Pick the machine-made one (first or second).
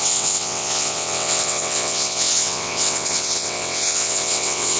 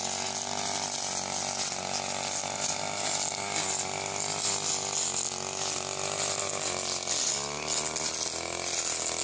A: first